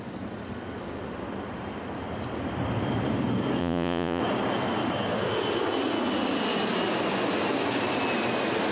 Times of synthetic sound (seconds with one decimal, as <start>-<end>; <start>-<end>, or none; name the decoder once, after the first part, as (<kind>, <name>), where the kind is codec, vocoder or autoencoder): 3.6-4.2 (vocoder, Vocos)